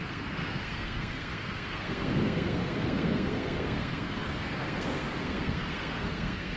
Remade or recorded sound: remade